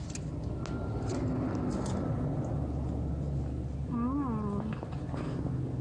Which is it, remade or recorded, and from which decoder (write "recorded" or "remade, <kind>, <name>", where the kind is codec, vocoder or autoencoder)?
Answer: recorded